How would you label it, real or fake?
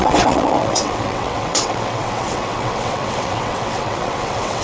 fake